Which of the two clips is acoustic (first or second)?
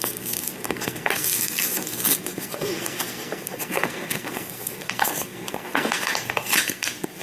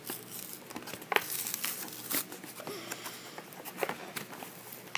second